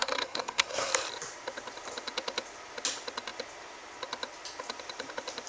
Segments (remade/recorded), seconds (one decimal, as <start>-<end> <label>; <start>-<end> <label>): 0.0-0.9 remade; 0.9-5.5 recorded